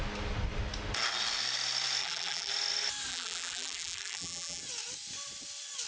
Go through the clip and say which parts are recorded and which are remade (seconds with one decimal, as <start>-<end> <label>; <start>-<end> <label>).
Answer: 0.0-2.0 recorded; 2.0-2.5 remade; 2.5-3.1 recorded; 3.1-4.6 remade; 4.6-5.9 recorded